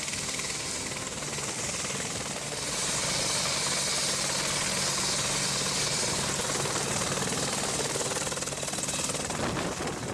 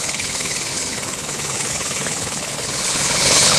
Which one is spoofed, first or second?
second